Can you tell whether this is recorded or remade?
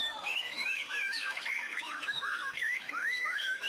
remade